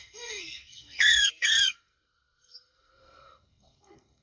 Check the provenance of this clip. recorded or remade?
remade